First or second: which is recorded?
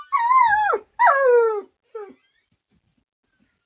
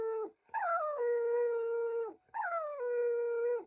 first